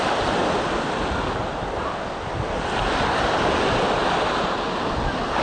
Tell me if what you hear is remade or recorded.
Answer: recorded